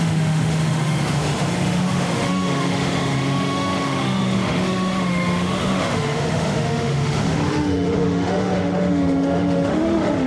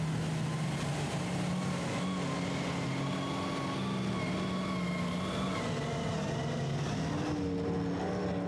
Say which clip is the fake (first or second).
first